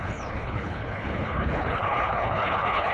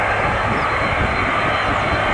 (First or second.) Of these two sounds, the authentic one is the second